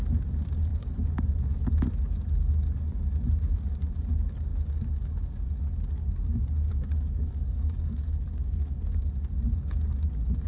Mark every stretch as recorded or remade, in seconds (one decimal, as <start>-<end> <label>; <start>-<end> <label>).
0.0-6.7 recorded; 6.7-9.1 remade; 9.1-10.5 recorded